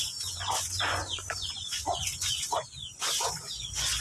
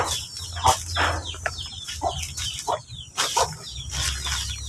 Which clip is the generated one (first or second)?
first